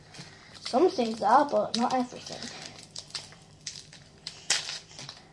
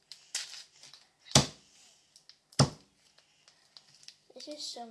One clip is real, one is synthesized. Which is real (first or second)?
second